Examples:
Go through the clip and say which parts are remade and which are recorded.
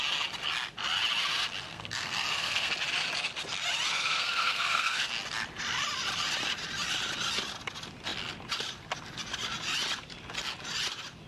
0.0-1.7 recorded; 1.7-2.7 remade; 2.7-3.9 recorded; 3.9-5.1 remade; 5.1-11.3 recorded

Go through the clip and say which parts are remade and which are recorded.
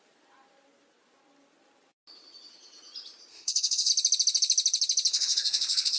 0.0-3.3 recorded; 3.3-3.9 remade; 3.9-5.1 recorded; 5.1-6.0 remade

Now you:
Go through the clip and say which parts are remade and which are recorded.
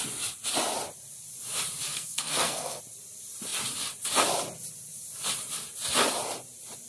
0.0-1.9 recorded; 1.9-2.8 remade; 2.8-6.9 recorded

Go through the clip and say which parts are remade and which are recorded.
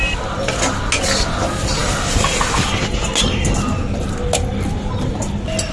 0.0-5.7 recorded